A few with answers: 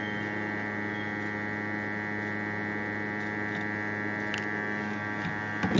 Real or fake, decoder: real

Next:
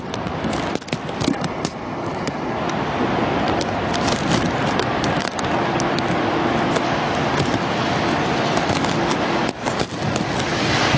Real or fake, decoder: real